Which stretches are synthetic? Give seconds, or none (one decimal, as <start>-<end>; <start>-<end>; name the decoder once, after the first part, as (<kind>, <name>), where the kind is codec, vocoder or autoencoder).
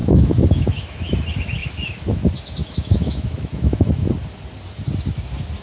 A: 0.0-1.1 (autoencoder, DAC-VAE); 1.6-2.2; 2.6-4.1